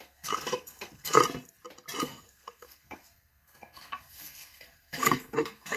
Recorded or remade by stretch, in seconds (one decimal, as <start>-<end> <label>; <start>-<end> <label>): 0.0-1.2 remade; 1.2-2.0 recorded; 2.0-5.8 remade